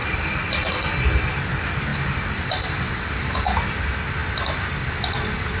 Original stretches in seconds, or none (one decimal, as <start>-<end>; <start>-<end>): 0.7-4.2